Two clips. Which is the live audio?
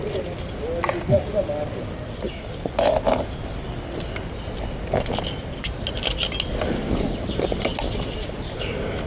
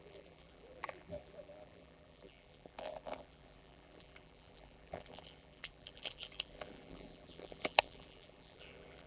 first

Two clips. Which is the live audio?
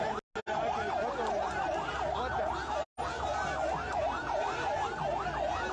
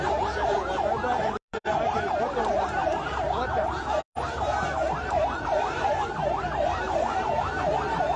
first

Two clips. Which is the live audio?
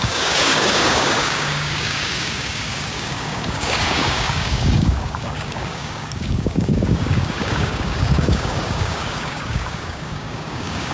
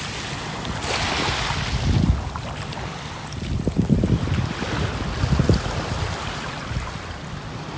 second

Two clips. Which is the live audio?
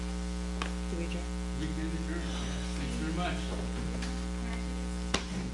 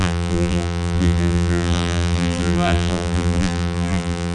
first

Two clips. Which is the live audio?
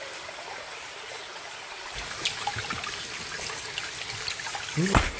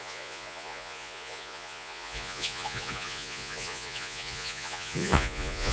first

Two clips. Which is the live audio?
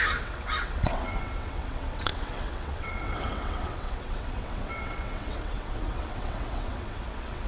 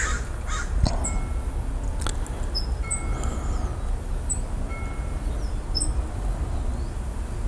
second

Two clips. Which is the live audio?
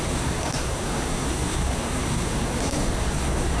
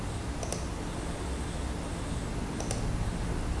second